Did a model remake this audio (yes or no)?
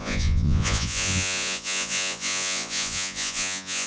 yes